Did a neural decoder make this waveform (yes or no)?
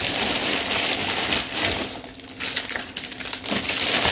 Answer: no